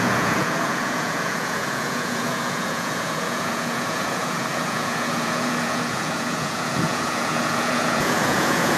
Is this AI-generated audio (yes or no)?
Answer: yes